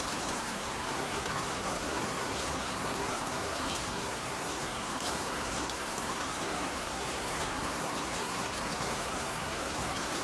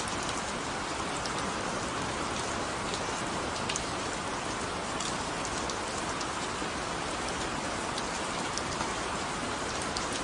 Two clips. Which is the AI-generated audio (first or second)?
first